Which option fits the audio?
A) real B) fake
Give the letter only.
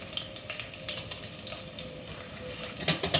A